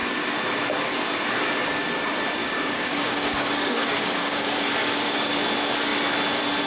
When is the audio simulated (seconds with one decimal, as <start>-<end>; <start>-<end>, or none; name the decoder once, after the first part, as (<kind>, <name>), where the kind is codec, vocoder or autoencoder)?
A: 2.4-5.4 (codec, DAC)